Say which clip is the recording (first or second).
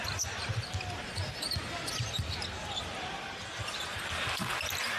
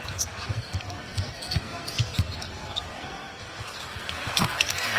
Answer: first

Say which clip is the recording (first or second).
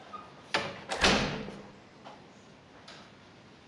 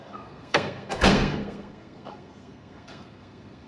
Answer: first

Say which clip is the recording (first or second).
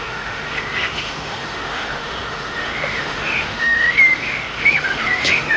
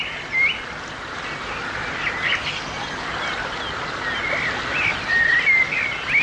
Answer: second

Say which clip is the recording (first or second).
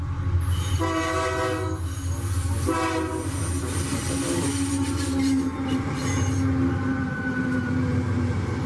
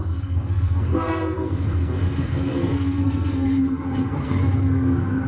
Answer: first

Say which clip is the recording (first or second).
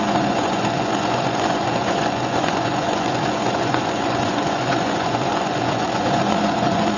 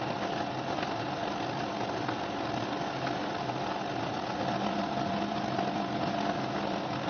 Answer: second